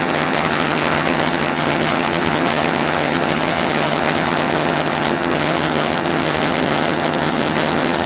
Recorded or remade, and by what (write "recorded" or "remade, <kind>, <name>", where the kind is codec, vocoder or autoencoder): remade, vocoder, HiFi-GAN